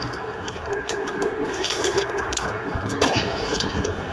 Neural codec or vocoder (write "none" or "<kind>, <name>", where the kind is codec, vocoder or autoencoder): codec, SNAC